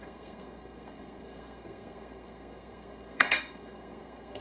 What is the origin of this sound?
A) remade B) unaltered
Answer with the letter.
A